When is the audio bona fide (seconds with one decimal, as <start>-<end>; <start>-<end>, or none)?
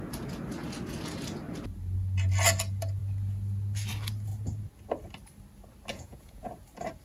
0.0-5.9; 6.5-7.0